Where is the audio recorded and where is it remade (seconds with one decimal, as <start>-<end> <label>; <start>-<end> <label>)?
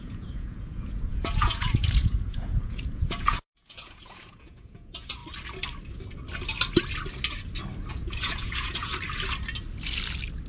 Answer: 0.0-5.2 remade; 5.2-7.9 recorded; 7.9-8.9 remade; 8.9-10.5 recorded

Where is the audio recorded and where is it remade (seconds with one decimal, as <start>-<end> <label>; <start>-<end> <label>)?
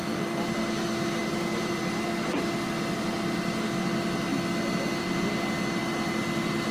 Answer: 0.0-6.7 recorded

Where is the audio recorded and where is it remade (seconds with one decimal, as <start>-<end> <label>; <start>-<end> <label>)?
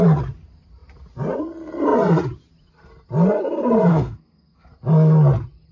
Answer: 0.0-3.9 recorded; 3.9-4.7 remade; 4.7-5.7 recorded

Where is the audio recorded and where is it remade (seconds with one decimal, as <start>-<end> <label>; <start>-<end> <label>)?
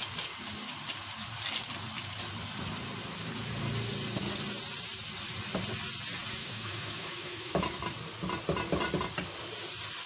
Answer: 0.0-6.4 recorded; 6.4-7.8 remade; 7.8-10.1 recorded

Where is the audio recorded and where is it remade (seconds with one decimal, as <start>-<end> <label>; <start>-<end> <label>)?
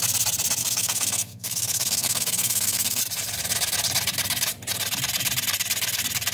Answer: 0.0-0.6 recorded; 0.6-3.0 remade; 3.0-6.3 recorded